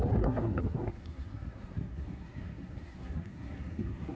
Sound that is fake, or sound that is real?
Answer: fake